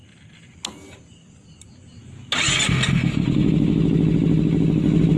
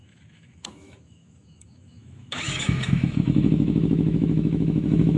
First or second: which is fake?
second